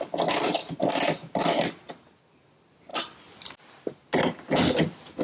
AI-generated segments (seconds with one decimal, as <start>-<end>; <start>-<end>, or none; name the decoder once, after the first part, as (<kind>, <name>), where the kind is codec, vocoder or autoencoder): 0.6-1.4 (vocoder, BigVGAN v2)